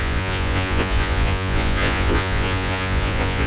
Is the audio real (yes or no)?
no